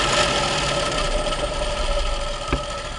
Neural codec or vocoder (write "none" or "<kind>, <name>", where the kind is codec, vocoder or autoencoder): none